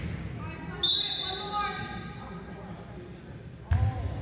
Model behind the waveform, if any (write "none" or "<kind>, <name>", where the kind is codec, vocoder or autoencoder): none